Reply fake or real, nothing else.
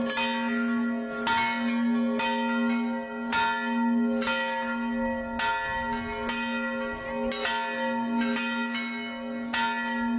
real